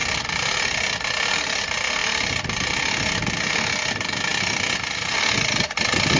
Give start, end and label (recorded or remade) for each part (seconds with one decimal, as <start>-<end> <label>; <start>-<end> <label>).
0.0-6.2 recorded